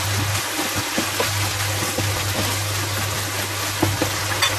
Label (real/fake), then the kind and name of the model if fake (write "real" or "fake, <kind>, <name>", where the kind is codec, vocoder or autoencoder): real